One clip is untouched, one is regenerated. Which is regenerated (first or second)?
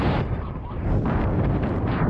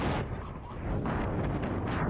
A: first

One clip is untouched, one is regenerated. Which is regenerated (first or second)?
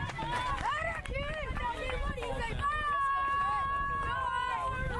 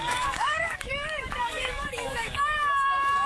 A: second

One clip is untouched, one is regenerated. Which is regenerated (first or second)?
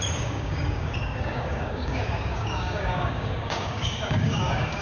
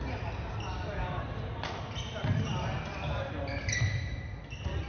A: first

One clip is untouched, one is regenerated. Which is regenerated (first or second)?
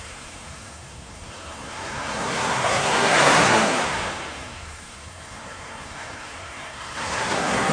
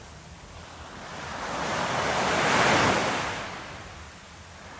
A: first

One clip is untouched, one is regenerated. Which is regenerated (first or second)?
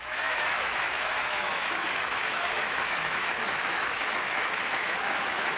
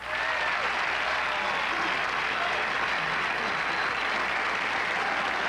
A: first